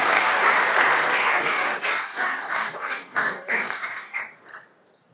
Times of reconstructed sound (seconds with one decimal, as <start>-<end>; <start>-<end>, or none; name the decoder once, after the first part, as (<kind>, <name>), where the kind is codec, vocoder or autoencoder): 0.0-0.5 (codec, DAC); 1.1-4.2